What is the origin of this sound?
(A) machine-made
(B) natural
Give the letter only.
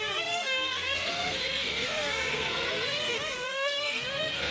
A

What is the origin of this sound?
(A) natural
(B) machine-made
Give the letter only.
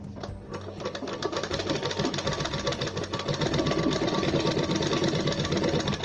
A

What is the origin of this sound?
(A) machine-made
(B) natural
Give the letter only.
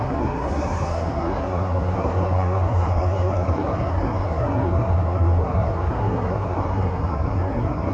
A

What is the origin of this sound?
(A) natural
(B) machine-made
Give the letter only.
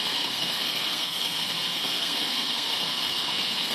B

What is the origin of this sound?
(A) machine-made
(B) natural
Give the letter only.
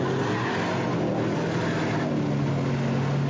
B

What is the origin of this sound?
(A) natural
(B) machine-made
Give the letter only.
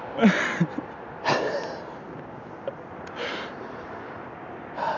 A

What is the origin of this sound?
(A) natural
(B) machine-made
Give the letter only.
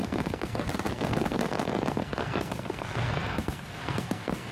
B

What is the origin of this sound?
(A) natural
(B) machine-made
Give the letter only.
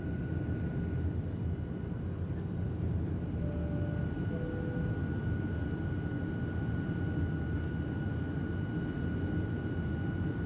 A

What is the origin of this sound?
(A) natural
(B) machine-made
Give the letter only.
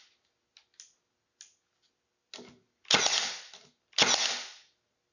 A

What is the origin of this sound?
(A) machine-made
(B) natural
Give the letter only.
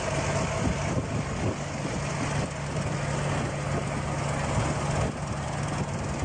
B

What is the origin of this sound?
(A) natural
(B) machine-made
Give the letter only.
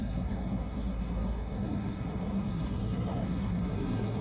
B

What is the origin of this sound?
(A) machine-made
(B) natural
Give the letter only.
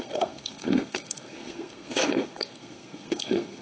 A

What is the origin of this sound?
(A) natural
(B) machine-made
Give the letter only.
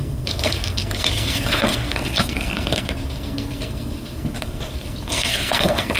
B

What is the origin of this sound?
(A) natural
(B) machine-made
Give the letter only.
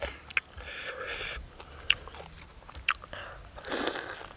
A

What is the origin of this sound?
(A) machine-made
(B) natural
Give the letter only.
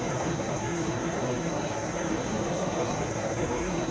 A